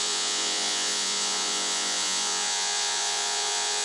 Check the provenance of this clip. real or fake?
fake